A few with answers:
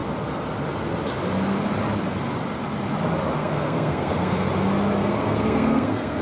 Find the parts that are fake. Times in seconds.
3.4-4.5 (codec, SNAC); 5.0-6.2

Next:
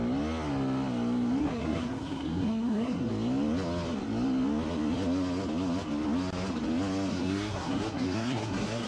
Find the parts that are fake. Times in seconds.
1.4-3.1 (codec, SNAC); 7.1-8.9

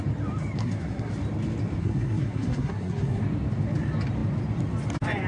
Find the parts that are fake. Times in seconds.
0.6-1.1 (codec, SNAC); 1.8-3.2

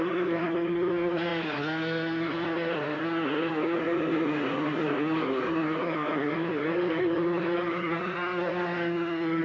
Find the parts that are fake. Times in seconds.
0.0-9.4 (codec, SNAC)

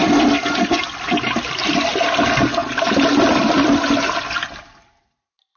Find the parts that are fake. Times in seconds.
none